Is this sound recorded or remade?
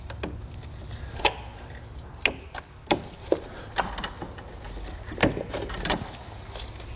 recorded